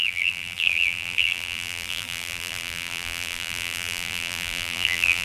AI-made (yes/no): yes